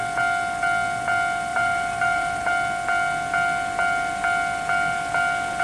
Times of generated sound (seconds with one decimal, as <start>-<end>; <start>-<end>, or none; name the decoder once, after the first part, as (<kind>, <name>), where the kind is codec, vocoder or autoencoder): 1.5-2.5 (vocoder, BigVGAN v2)